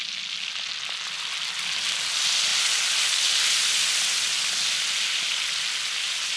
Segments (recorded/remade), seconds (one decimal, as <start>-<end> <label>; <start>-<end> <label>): 0.0-6.4 recorded